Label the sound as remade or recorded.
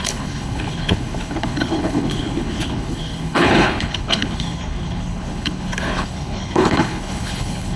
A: remade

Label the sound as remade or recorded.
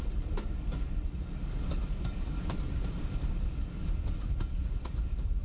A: recorded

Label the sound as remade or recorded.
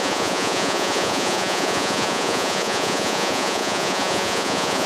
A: remade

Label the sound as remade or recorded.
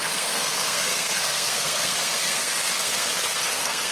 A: remade